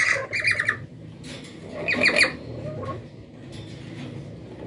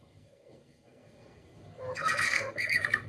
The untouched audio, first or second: first